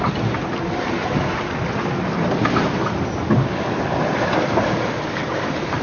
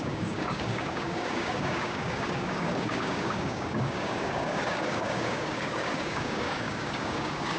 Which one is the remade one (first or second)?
second